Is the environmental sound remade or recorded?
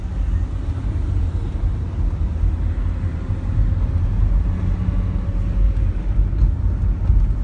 recorded